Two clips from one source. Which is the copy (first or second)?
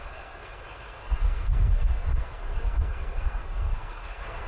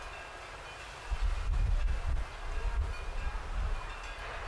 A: first